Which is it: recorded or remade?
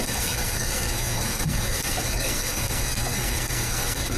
remade